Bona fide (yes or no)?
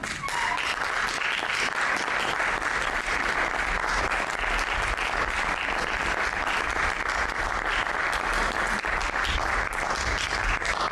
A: yes